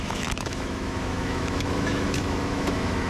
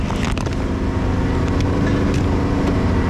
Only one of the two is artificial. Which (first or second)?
first